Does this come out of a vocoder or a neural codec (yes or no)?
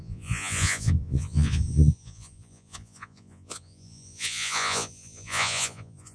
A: yes